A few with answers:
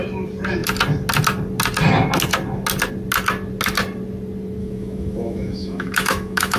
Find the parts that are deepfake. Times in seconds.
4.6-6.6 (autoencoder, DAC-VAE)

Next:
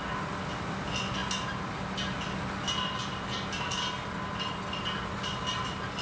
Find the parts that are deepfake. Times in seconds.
none

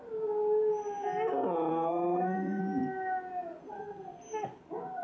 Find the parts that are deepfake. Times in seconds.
1.7-2.6 (codec, SNAC); 3.6-4.2

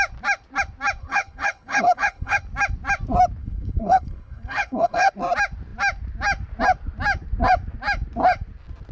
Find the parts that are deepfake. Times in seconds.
1.0-2.4 (codec, HILCodec); 3.4-5.1

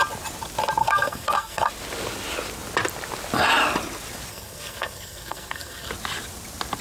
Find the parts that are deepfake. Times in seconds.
0.8-1.7 (codec, SNAC); 4.3-5.9

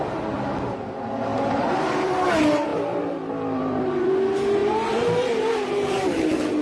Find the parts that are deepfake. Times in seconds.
1.3-2.1 (vocoder, BigVGAN v2); 2.7-4.1; 4.6-5.4

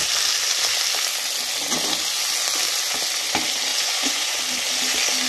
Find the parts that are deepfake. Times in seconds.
3.7-4.4 (vocoder, Vocos)